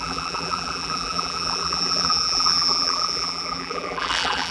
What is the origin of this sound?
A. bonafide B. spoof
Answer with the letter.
B